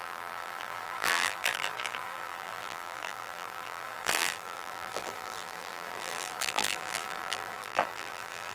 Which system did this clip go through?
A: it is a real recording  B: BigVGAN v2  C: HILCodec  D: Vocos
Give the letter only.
B